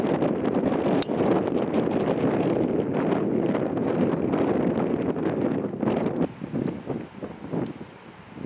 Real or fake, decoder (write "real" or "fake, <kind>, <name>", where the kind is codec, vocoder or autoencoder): real